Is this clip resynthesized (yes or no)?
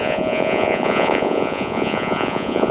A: yes